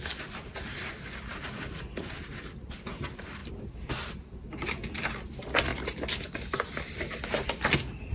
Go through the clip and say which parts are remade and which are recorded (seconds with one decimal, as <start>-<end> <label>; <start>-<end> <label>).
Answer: 0.0-8.1 recorded